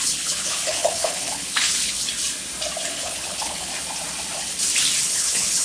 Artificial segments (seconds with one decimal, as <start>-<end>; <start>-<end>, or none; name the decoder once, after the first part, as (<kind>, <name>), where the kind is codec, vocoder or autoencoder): 0.0-2.1 (codec, HILCodec); 2.9-3.7; 5.0-5.6